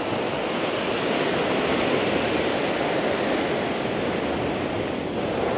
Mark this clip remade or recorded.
recorded